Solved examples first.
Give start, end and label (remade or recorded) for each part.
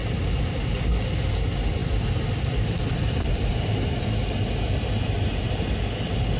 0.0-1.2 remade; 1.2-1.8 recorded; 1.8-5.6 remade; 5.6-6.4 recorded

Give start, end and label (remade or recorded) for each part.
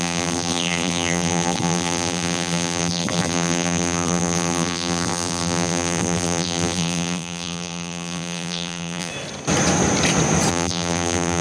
0.0-9.1 remade; 9.1-10.5 recorded; 10.5-11.4 remade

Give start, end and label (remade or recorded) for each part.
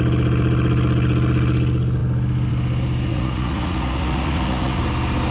0.0-3.1 recorded; 3.1-4.8 remade; 4.8-5.3 recorded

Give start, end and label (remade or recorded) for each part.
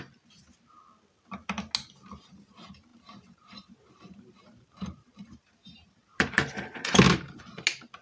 0.0-2.9 recorded; 2.9-7.4 remade; 7.4-8.0 recorded